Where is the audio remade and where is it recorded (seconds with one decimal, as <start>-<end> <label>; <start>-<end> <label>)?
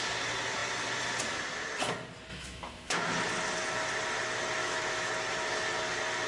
0.0-2.3 recorded; 2.3-2.9 remade; 2.9-4.6 recorded; 4.6-5.1 remade; 5.1-6.3 recorded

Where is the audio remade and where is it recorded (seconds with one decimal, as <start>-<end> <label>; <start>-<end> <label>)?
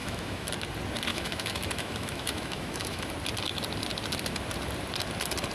0.0-0.5 remade; 0.5-1.1 recorded; 1.1-3.1 remade; 3.1-5.5 recorded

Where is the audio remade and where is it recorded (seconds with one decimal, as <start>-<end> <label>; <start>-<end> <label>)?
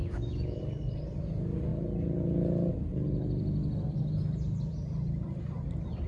0.0-0.6 remade; 0.6-6.1 recorded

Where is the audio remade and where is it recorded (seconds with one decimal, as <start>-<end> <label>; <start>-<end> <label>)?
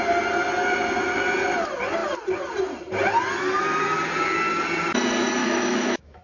0.0-5.4 recorded; 5.4-6.2 remade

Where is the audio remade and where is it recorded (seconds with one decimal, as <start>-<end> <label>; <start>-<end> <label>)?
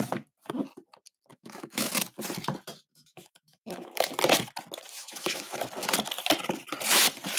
0.0-1.3 recorded; 1.3-1.9 remade; 1.9-2.9 recorded; 2.9-4.1 remade; 4.1-5.0 recorded; 5.0-5.6 remade; 5.6-7.4 recorded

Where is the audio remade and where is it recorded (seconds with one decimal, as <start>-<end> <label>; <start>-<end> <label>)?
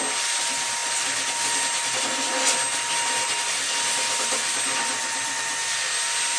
0.0-6.4 recorded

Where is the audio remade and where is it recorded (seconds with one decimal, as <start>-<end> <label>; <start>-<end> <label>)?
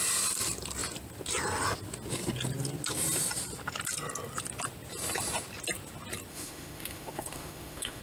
0.0-6.3 recorded; 6.3-8.0 remade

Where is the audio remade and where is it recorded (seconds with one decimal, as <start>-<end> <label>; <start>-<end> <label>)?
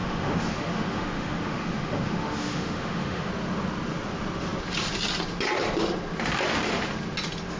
0.0-3.3 remade; 3.3-7.6 recorded